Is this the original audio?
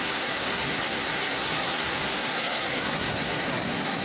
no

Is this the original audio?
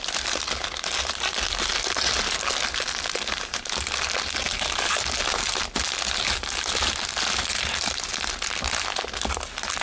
yes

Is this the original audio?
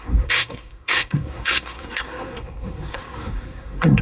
no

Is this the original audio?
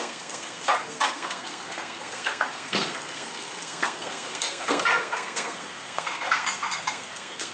no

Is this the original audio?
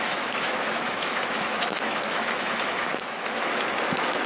no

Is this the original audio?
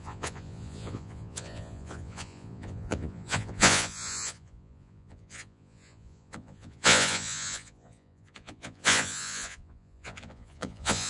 no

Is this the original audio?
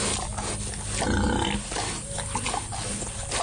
yes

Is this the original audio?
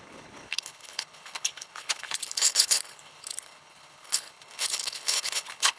no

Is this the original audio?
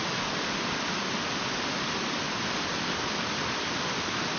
yes